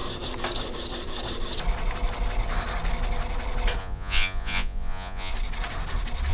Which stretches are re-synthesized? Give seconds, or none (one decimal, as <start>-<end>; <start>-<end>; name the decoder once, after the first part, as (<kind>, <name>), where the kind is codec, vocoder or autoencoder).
3.8-5.3 (vocoder, Vocos)